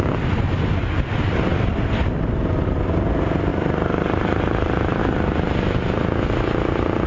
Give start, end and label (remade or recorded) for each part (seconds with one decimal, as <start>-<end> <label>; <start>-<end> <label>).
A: 0.0-1.5 recorded; 1.5-2.0 remade; 2.0-3.5 recorded; 3.5-5.0 remade; 5.0-7.1 recorded